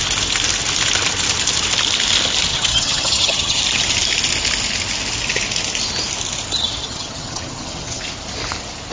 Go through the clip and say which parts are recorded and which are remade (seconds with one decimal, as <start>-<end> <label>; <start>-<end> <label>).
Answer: 0.0-2.5 recorded; 2.5-3.6 remade; 3.6-6.8 recorded; 6.8-8.0 remade; 8.0-8.9 recorded